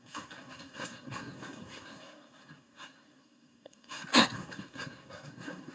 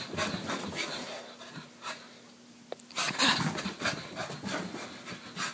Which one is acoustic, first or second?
second